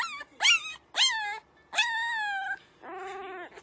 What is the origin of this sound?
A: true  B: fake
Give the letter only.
A